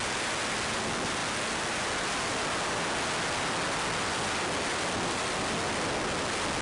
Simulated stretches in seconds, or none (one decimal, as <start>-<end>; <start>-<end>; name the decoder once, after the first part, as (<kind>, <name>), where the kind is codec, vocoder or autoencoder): none